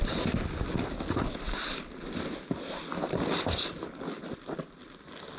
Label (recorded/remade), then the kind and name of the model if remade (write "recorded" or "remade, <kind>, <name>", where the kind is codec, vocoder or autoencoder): recorded